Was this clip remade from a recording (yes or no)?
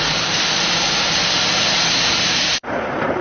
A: yes